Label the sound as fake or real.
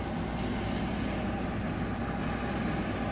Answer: real